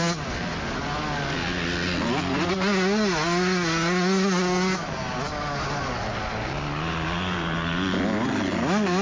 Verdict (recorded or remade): recorded